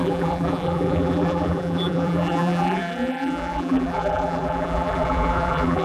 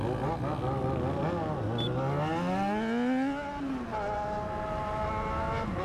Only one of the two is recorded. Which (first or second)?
second